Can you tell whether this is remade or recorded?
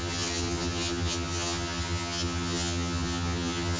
remade